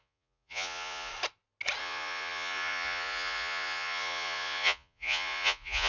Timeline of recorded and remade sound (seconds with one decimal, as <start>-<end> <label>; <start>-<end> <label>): 0.0-1.1 remade; 1.1-1.8 recorded; 1.8-5.9 remade